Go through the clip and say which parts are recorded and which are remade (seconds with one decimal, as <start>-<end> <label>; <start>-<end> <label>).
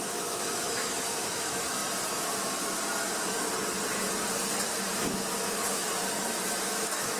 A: 0.0-1.8 remade; 1.8-4.9 recorded; 4.9-5.9 remade; 5.9-6.6 recorded; 6.6-7.2 remade